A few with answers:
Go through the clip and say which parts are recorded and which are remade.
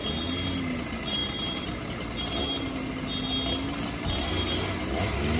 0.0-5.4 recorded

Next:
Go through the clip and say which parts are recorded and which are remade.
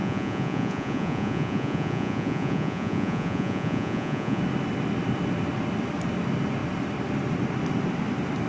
0.0-4.4 remade; 4.4-8.5 recorded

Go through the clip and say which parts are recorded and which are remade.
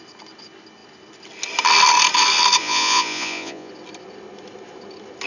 0.0-2.6 recorded; 2.6-3.7 remade; 3.7-5.3 recorded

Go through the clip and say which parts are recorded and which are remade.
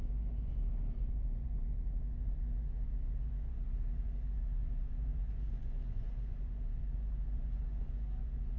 0.0-8.6 remade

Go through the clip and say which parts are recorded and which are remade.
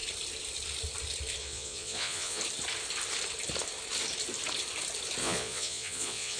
0.0-1.4 recorded; 1.4-2.4 remade; 2.4-5.2 recorded; 5.2-6.4 remade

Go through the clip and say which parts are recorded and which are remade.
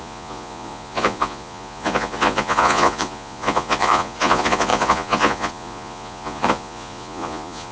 0.0-7.7 remade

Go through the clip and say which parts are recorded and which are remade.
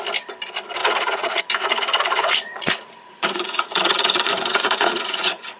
0.0-0.8 recorded; 0.8-1.4 remade; 1.4-2.2 recorded; 2.2-5.6 remade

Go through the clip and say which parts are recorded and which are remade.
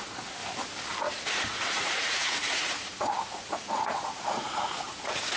0.0-0.4 remade; 0.4-1.0 recorded; 1.0-5.4 remade